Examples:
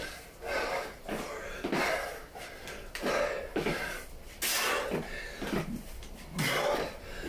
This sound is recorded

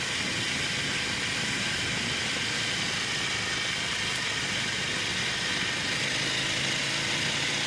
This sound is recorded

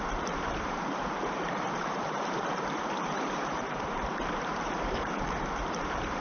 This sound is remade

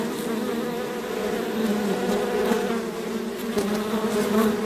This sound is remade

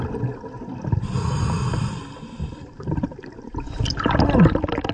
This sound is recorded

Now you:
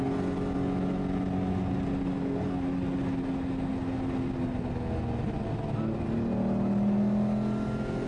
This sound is recorded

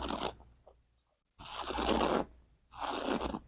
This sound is recorded